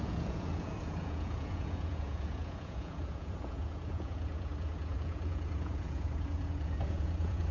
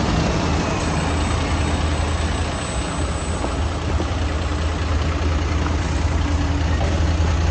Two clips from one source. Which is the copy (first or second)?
first